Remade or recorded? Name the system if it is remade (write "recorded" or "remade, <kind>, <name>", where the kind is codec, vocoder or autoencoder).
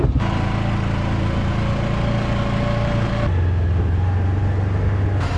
recorded